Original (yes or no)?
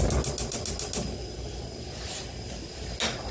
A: yes